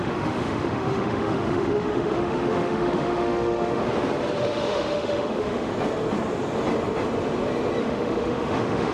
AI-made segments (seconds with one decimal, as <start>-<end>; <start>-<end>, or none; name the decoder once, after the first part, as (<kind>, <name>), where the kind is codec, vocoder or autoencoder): 0.0-3.8 (autoencoder, DAC-VAE); 4.4-5.7; 7.8-8.9